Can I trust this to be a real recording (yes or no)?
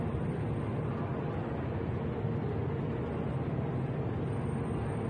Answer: yes